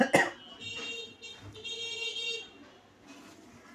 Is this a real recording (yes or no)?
yes